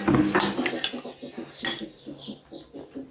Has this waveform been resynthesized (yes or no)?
no